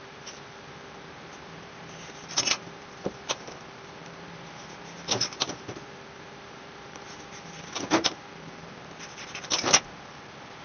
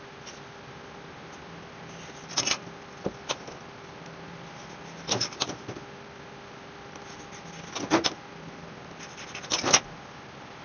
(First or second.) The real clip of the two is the second